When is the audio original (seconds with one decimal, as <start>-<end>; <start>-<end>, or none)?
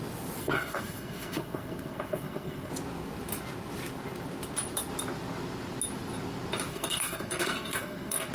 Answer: 0.0-0.4; 2.7-6.7